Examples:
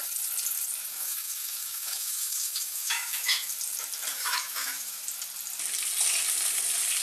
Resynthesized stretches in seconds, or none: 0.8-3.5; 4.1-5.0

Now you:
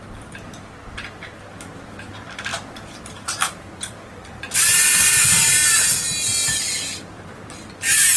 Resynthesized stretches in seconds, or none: 2.5-7.4

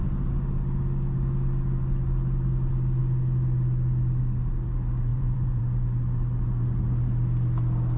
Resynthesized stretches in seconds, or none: 5.1-5.6

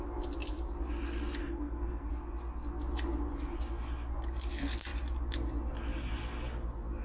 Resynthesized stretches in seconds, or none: 1.4-2.1

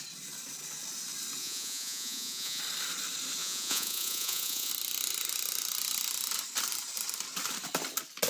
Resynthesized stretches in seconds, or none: 1.4-2.6; 3.4-4.7

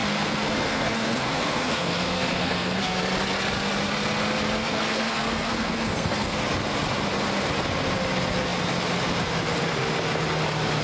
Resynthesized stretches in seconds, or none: 0.0-3.0; 4.6-6.4